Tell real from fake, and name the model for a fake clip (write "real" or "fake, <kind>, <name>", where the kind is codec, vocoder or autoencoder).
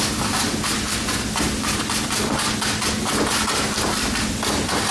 real